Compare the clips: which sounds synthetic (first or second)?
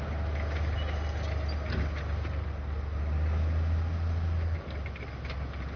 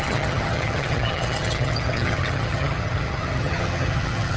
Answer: second